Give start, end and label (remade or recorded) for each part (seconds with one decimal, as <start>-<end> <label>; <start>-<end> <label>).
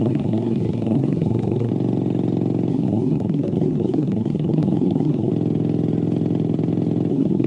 0.0-1.7 remade; 1.7-2.7 recorded; 2.7-5.3 remade; 5.3-7.1 recorded; 7.1-7.5 remade